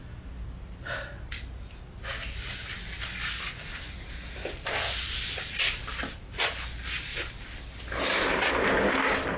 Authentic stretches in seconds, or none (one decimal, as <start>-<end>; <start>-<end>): 0.0-9.4